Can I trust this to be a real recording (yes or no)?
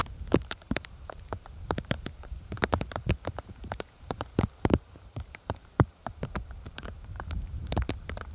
no